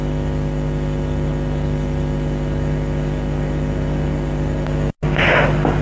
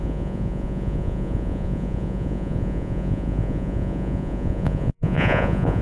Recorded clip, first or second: first